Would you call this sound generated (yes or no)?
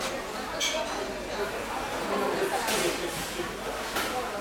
no